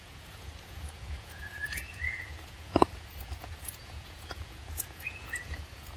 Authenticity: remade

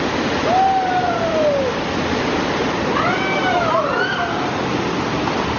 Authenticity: recorded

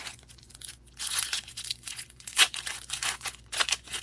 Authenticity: remade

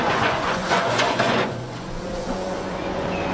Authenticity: remade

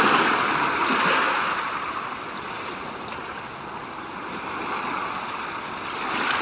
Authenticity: recorded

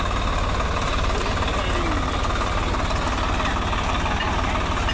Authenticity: recorded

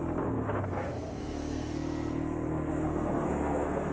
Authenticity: remade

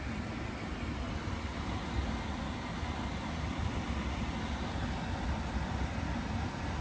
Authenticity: recorded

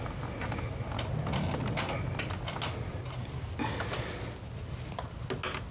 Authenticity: recorded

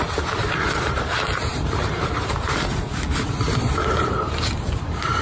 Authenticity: remade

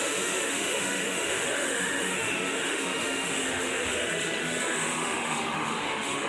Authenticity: remade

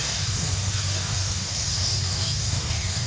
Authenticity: remade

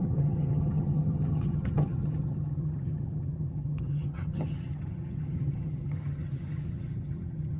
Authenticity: remade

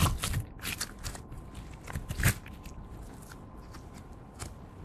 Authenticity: recorded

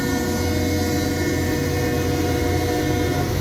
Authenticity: recorded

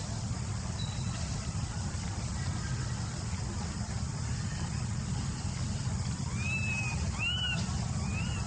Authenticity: recorded